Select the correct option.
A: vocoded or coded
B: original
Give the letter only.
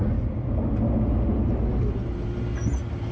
B